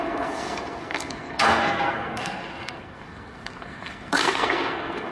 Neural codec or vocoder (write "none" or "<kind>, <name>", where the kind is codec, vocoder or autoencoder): codec, SNAC